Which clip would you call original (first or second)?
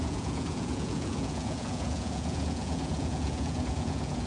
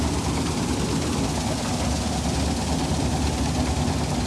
second